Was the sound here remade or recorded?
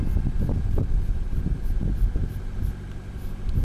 recorded